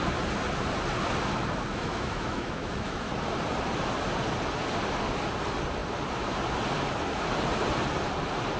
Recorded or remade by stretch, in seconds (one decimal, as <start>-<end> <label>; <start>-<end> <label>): 0.0-1.7 recorded; 1.7-3.1 remade; 3.1-8.6 recorded